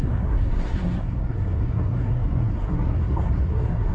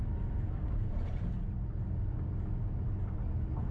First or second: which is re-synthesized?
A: first